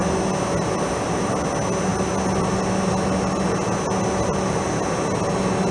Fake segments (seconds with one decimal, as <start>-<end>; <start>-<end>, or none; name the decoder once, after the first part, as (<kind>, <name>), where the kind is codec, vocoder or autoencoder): none